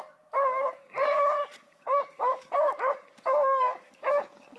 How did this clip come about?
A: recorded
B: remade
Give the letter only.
B